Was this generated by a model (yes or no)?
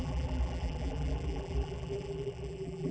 yes